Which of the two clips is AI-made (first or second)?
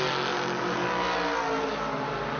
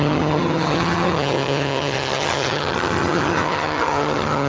second